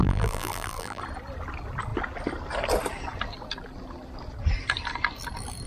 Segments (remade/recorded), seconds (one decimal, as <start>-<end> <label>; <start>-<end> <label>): 0.0-1.0 remade; 1.0-5.7 recorded